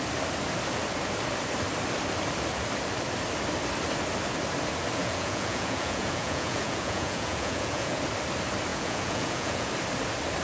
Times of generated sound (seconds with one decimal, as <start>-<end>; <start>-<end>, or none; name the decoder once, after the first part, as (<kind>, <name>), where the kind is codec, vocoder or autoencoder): 5.0-8.0 (vocoder, Vocos); 8.7-9.7